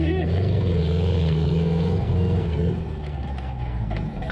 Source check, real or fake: fake